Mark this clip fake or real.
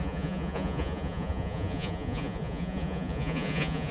fake